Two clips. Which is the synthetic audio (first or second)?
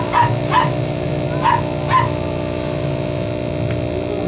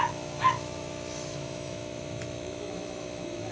second